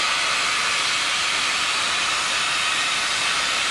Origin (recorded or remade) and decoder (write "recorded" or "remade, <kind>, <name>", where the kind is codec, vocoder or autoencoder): remade, vocoder, BigVGAN v2